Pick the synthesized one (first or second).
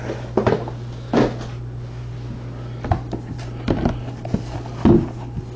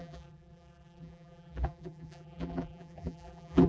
second